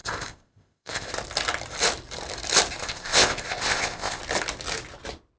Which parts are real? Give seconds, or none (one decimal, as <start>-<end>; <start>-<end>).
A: 1.1-2.8; 4.2-5.4